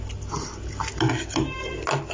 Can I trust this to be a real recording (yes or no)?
yes